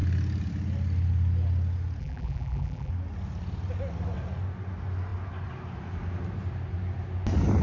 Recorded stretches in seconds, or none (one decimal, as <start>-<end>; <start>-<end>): 0.0-2.0; 2.9-7.6